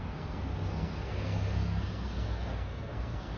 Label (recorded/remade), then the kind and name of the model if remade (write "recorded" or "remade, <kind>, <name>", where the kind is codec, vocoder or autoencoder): remade, codec, SNAC